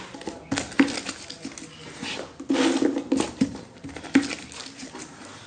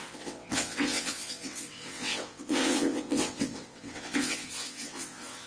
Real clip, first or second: first